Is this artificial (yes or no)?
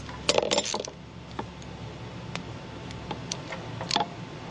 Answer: no